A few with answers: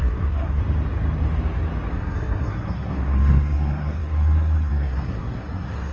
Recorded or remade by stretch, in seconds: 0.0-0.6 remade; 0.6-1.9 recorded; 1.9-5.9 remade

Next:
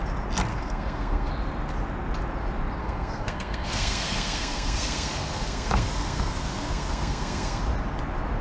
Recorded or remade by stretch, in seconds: 0.0-0.5 recorded; 0.5-1.3 remade; 1.3-2.8 recorded; 2.8-7.6 remade; 7.6-8.4 recorded